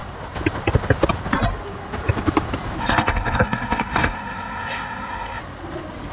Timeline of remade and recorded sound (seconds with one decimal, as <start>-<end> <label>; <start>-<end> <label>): 0.0-2.8 recorded; 2.8-5.4 remade; 5.4-6.1 recorded